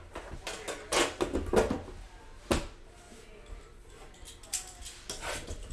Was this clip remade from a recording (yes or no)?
no